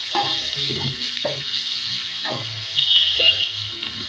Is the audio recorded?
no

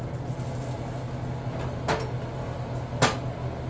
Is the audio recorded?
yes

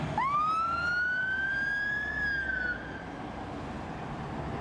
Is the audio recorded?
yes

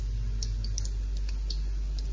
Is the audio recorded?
yes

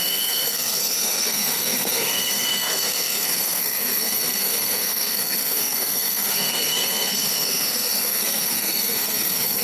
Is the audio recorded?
no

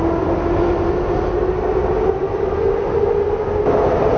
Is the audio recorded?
yes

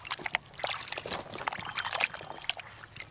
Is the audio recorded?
yes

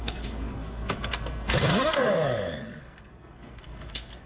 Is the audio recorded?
no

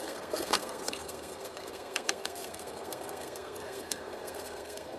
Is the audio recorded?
no